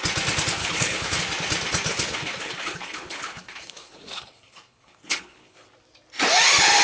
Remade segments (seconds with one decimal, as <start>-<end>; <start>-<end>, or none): 0.6-1.2; 1.9-5.7